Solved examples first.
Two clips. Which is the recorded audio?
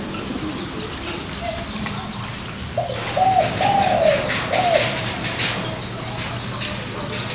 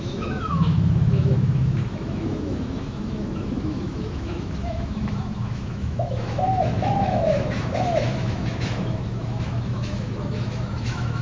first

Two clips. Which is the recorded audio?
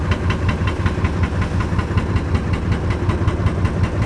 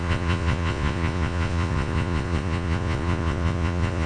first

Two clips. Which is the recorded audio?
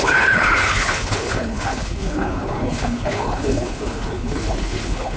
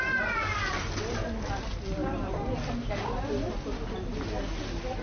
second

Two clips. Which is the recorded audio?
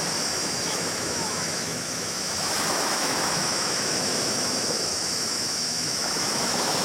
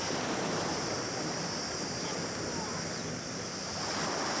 second